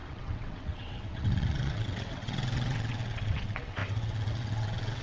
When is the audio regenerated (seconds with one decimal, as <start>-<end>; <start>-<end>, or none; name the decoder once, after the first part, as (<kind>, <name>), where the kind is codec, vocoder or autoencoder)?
0.0-5.0 (vocoder, WaveNeXt)